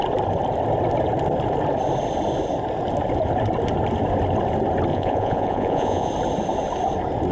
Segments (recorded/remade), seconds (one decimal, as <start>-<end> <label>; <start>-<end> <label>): 0.0-4.9 recorded; 4.9-6.1 remade; 6.1-7.3 recorded